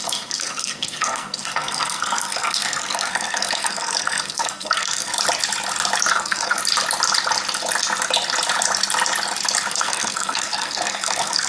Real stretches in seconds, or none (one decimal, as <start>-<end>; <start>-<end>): 5.1-6.1; 6.6-9.7